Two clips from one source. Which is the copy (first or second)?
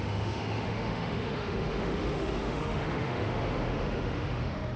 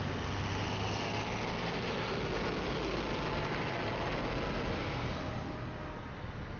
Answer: first